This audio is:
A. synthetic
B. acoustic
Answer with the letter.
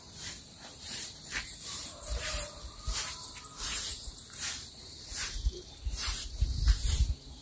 A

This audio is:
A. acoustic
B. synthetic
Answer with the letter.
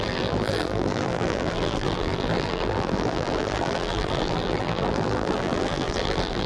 B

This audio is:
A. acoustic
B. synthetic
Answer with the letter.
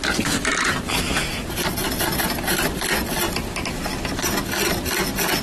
A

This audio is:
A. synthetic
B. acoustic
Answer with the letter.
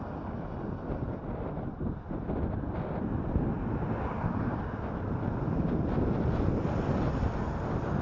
B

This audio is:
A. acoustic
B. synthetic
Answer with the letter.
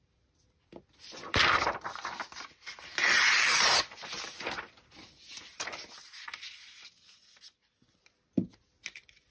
A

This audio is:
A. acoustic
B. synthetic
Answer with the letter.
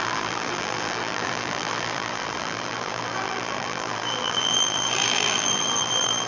B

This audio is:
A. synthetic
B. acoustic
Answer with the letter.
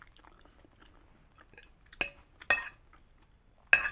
B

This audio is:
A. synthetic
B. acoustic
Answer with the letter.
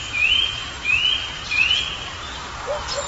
B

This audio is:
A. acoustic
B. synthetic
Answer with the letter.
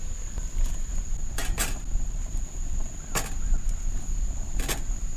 A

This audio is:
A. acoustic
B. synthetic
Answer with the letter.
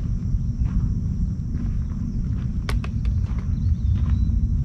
A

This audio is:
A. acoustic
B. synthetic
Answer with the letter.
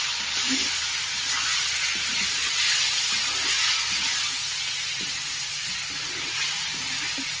A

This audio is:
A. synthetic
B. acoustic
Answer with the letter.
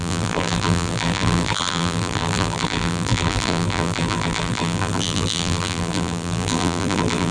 A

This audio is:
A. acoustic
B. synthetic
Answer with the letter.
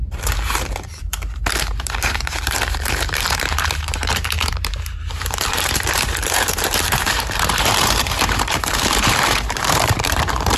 B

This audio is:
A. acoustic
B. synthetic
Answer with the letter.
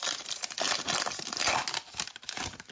A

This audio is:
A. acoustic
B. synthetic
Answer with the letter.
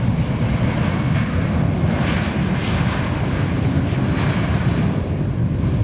A